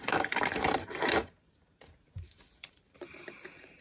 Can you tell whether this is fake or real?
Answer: fake